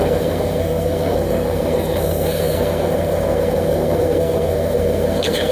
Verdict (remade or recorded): remade